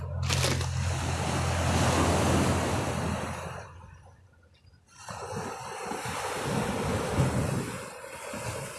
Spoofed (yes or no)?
no